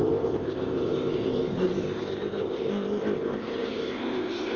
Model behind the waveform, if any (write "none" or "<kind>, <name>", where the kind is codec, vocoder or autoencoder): codec, ZipCodec